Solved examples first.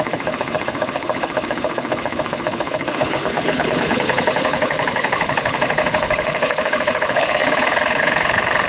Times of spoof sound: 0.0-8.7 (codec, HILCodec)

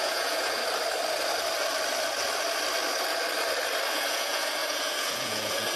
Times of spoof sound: 0.0-0.6 (vocoder, Vocos); 3.9-5.8